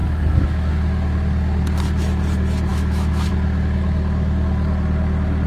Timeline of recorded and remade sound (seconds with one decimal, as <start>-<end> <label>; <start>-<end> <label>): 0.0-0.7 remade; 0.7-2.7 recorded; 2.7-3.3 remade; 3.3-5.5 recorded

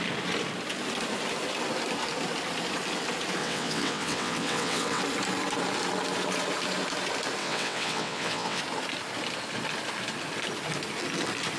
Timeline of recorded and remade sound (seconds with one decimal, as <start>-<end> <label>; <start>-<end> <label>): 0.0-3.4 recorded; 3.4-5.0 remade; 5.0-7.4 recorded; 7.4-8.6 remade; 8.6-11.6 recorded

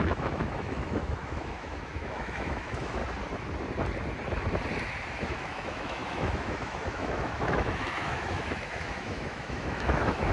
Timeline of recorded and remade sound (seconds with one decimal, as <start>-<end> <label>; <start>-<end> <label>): 0.0-3.0 remade; 3.0-5.1 recorded; 5.1-10.3 remade

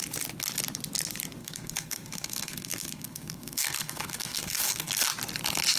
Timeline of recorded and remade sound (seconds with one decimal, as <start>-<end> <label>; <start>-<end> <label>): 0.0-1.4 recorded; 1.4-4.9 remade; 4.9-5.8 recorded

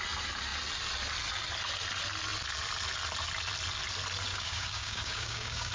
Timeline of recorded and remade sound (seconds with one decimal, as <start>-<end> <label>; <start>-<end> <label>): 0.0-4.3 recorded; 4.3-5.7 remade

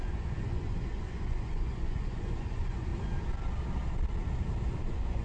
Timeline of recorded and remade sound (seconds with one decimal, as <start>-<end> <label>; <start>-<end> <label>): 0.0-2.9 remade; 2.9-4.8 recorded; 4.8-5.2 remade